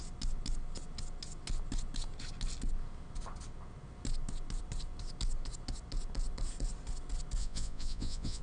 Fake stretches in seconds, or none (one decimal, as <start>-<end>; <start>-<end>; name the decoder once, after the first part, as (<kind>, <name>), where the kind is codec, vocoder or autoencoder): 7.4-8.4 (vocoder, Vocos)